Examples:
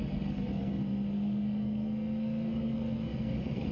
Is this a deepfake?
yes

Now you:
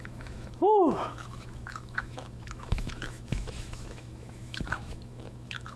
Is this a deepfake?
yes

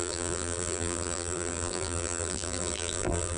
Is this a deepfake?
yes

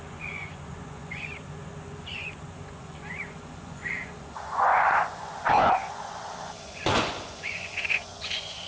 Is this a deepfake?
yes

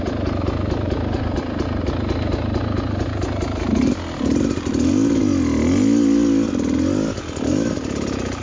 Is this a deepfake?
no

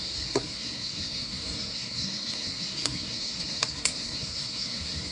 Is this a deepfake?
yes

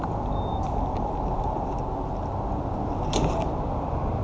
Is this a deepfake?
no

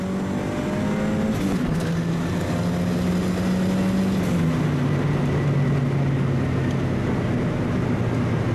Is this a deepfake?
no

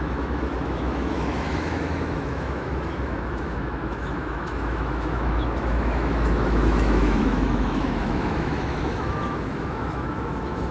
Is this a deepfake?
yes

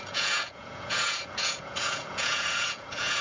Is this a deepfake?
yes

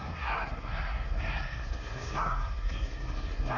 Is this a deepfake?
yes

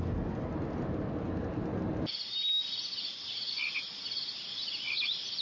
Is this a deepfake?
no